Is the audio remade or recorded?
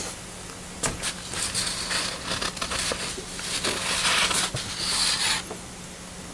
recorded